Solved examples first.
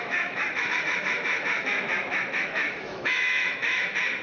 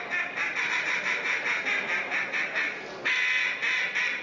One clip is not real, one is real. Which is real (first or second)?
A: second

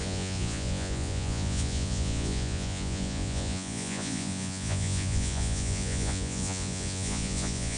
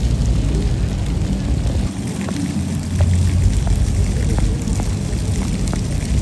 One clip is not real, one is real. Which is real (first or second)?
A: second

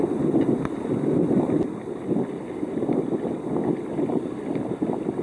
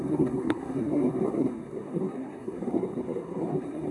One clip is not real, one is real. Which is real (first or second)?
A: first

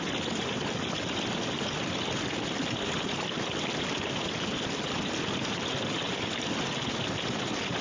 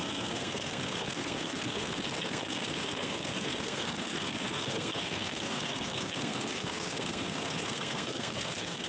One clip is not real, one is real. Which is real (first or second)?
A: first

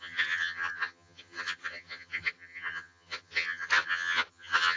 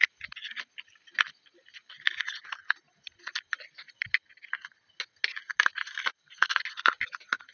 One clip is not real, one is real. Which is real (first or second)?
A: second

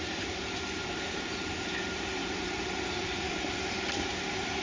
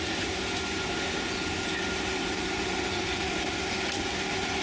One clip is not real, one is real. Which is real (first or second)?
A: second